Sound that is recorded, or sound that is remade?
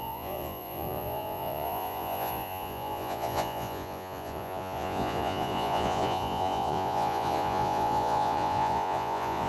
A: remade